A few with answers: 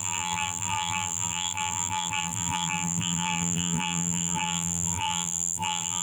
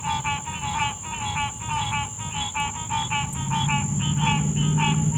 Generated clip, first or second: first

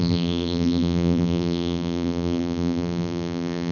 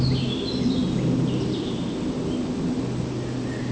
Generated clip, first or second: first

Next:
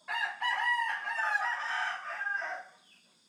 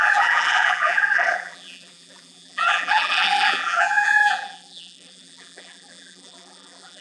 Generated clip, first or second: second